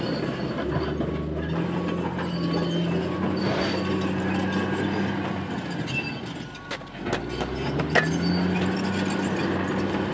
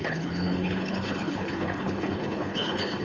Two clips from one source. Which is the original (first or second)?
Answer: first